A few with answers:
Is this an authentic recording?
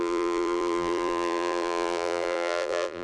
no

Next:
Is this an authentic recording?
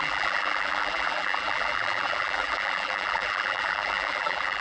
no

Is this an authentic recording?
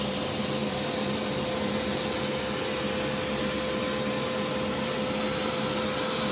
yes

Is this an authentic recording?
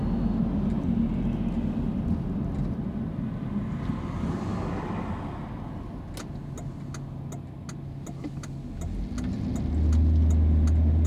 yes